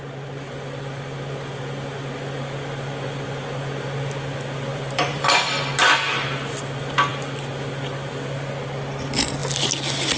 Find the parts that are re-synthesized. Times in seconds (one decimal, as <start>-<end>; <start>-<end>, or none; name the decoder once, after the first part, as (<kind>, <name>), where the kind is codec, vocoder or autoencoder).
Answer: 4.7-5.6 (vocoder, BigVGAN v2)